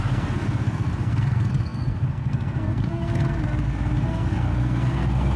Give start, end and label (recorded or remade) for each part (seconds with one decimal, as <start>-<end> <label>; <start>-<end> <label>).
0.0-5.4 remade